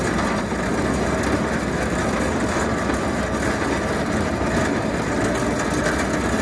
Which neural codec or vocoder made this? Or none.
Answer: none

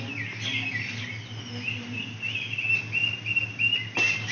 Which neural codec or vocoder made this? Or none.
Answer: none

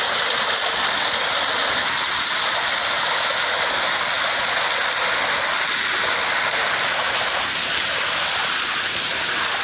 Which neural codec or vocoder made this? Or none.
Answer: none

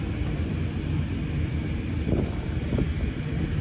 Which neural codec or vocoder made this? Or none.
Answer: none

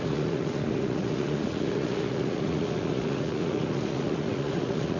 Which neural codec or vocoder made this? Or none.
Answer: vocoder, Vocos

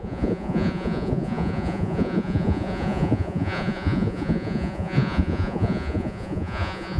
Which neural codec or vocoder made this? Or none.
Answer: vocoder, Vocos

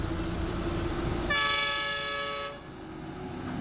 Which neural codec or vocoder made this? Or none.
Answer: none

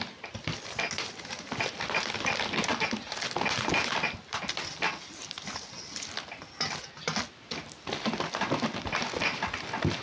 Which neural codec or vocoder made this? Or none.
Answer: none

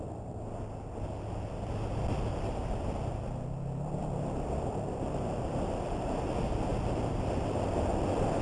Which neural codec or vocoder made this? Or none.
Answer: none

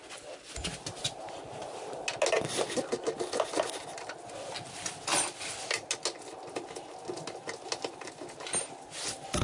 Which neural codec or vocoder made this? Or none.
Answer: none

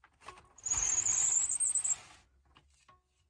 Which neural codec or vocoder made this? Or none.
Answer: none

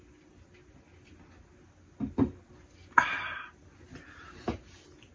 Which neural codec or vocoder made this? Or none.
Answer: none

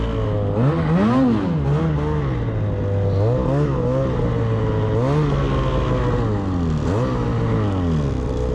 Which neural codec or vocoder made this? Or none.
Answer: none